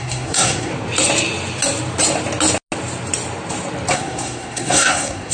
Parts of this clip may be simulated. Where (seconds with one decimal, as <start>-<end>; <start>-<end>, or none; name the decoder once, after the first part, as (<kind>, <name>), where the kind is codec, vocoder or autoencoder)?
0.0-0.7 (codec, SNAC); 3.9-5.3

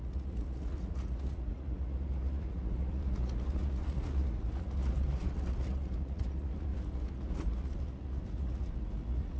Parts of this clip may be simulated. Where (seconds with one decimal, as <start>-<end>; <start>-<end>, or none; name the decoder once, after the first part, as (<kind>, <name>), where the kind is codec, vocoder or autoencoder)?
0.0-9.4 (vocoder, Vocos)

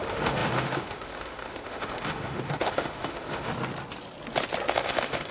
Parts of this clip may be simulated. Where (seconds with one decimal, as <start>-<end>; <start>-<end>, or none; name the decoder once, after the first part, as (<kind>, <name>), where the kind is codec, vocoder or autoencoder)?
0.0-3.5 (autoencoder, DAC-VAE); 4.7-5.3

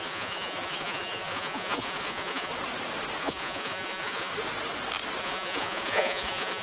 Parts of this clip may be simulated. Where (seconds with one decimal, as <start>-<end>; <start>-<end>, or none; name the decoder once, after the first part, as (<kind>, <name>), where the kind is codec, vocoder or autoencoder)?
0.0-2.5 (vocoder, Vocos); 3.2-4.3; 5.2-6.6

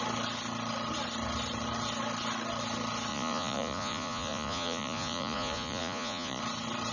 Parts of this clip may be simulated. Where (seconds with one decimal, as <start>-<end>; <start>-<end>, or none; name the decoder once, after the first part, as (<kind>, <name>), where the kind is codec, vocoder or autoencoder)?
3.1-6.4 (vocoder, Vocos)